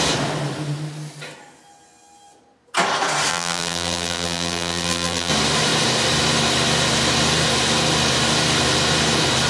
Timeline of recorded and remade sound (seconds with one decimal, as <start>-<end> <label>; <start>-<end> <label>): 0.0-3.3 recorded; 3.3-5.3 remade; 5.3-9.5 recorded